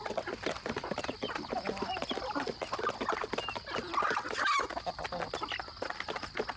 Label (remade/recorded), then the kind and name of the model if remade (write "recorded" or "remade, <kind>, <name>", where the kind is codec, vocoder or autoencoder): recorded